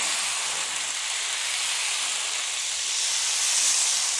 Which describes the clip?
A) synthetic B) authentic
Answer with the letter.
B